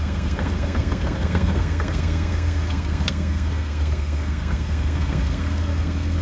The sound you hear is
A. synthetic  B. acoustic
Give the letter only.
A